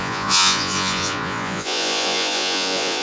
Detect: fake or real fake